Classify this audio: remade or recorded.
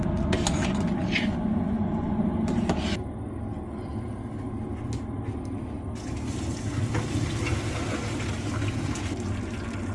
recorded